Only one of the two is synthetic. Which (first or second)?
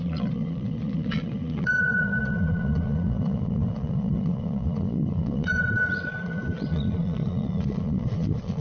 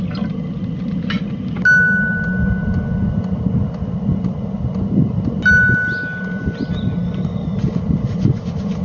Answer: first